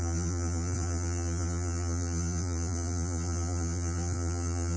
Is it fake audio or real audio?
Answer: fake